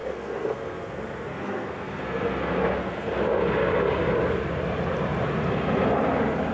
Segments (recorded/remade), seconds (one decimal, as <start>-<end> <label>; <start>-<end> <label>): 0.0-3.2 remade; 3.2-6.5 recorded